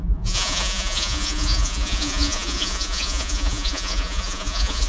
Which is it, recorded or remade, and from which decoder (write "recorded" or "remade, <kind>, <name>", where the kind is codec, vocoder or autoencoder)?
remade, vocoder, Vocos